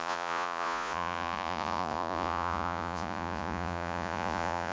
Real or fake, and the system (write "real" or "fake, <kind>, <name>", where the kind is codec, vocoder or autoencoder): fake, vocoder, Vocos